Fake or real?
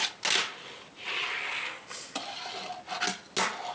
real